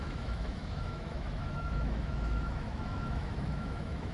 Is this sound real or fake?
fake